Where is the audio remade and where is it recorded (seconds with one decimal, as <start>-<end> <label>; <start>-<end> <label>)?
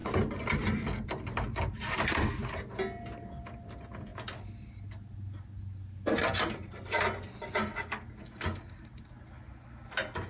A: 0.0-10.3 recorded